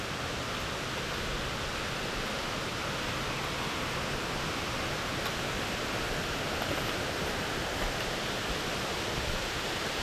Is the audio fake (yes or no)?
no